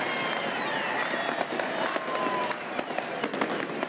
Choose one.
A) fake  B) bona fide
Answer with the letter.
B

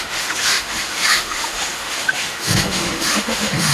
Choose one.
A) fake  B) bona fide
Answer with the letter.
A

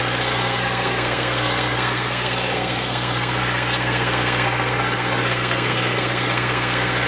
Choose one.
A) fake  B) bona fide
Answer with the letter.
A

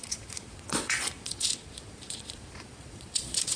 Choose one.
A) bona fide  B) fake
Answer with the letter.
B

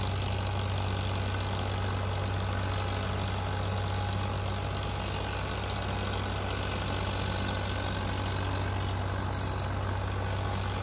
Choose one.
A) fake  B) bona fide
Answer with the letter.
B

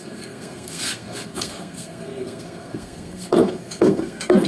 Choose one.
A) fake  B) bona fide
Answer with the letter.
A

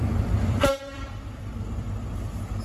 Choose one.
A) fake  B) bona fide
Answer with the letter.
A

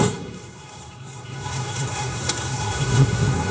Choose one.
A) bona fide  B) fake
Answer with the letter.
B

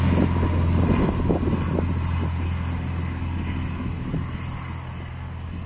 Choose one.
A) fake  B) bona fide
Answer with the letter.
B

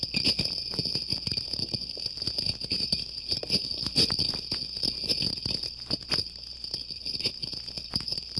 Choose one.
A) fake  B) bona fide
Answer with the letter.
B